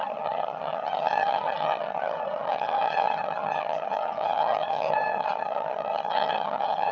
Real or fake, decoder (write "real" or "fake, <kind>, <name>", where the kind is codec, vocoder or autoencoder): fake, vocoder, HiFi-GAN